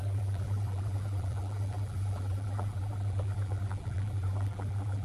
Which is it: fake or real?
fake